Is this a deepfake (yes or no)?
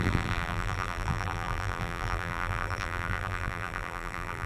yes